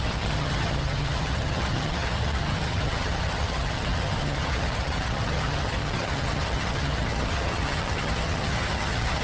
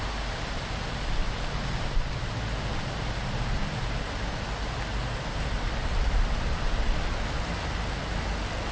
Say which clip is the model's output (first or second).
first